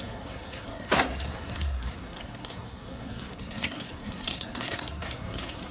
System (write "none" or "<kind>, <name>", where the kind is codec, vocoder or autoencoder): codec, SNAC